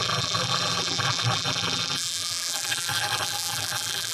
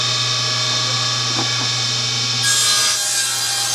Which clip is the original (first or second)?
second